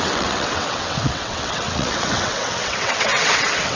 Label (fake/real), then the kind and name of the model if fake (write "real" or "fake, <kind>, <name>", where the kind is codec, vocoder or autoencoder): fake, vocoder, WaveNeXt